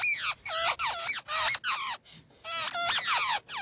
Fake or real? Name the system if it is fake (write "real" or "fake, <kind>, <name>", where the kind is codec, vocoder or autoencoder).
real